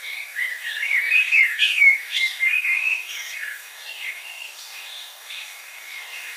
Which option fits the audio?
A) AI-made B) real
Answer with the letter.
A